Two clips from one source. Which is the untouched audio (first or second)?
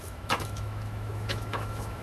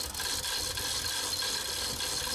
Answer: second